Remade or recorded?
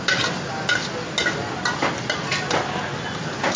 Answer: recorded